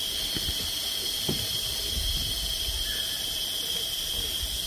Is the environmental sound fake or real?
real